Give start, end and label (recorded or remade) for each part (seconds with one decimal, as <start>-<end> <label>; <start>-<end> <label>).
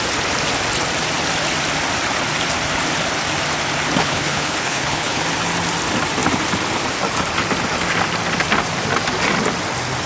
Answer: 0.0-4.0 recorded; 4.0-5.2 remade; 5.2-10.1 recorded